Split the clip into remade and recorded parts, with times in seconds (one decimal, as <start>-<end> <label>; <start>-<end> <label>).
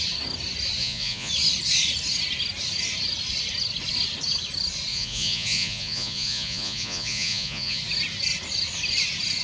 0.0-0.8 recorded; 0.8-1.3 remade; 1.3-4.9 recorded; 4.9-7.8 remade; 7.8-9.4 recorded